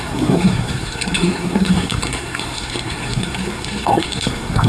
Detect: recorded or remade remade